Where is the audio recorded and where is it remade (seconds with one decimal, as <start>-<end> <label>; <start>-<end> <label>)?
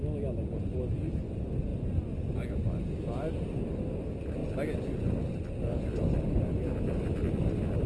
0.0-7.9 recorded